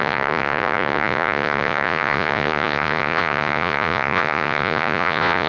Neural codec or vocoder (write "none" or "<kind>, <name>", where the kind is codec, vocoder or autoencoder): vocoder, Vocos